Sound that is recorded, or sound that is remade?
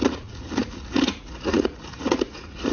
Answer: remade